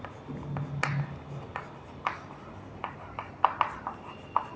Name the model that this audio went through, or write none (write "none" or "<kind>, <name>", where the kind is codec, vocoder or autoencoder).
none